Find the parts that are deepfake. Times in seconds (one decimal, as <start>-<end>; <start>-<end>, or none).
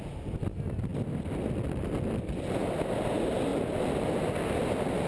none